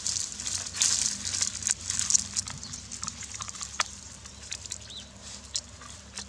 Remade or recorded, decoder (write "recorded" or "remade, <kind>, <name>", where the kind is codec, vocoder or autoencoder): recorded